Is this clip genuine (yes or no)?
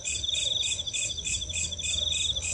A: yes